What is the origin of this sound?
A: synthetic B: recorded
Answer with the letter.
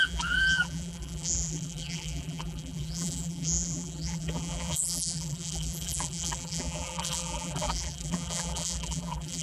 A